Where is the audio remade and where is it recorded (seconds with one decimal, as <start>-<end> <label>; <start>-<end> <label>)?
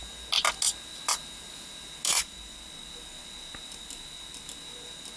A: 0.0-5.2 recorded